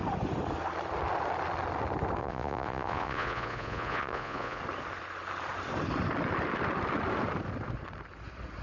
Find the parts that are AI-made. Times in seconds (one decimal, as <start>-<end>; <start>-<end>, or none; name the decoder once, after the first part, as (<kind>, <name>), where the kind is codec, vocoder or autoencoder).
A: 2.2-4.6 (vocoder, Vocos)

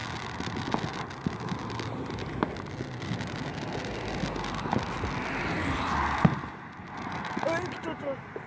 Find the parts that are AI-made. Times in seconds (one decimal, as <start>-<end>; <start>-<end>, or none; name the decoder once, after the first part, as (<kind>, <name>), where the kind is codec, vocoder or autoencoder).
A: none

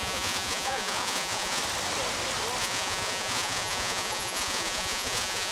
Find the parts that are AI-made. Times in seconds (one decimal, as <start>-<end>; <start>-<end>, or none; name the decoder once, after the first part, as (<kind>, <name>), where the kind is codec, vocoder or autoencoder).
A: 0.0-1.6 (vocoder, Vocos); 2.6-5.5

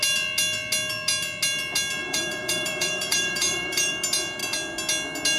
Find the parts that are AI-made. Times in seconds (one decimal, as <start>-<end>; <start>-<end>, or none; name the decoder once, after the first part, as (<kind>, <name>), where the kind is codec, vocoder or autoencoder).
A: 2.0-3.9 (vocoder, BigVGAN v2)

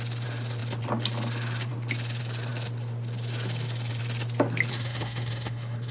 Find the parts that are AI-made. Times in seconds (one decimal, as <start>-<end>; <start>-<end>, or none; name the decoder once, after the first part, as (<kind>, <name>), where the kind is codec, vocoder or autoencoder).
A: 4.7-5.9 (codec, SNAC)